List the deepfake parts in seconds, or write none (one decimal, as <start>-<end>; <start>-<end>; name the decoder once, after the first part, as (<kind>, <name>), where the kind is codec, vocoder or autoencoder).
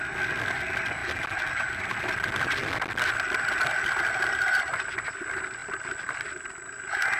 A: 1.0-4.2 (vocoder, BigVGAN v2); 5.6-6.6